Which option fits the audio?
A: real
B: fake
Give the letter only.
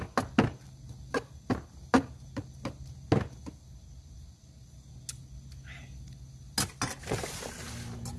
A